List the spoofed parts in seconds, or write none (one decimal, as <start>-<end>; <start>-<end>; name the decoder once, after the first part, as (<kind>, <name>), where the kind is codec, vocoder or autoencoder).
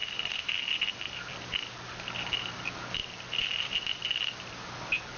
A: none